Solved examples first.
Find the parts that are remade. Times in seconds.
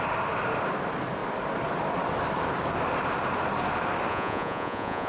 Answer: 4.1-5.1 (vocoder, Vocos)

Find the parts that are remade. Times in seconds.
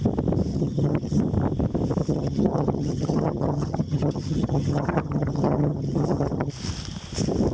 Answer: 0.5-1.2 (vocoder, HiFi-GAN); 2.0-6.5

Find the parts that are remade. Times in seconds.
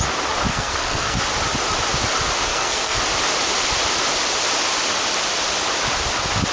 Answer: 0.5-1.2 (codec, SNAC); 2.5-3.0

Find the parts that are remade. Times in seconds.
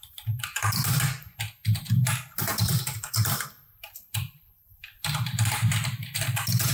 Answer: 2.5-6.7 (vocoder, BigVGAN v2)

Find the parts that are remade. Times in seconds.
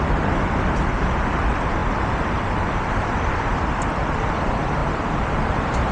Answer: 0.0-5.9 (vocoder, BigVGAN v2)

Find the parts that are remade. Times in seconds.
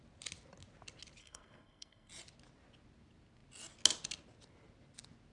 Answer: 1.2-2.1 (codec, SNAC)